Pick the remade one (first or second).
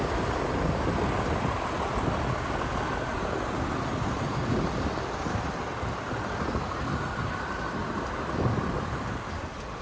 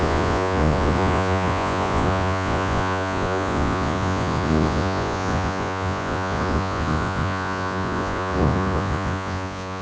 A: second